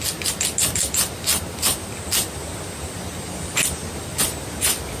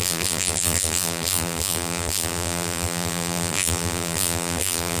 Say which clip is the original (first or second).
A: first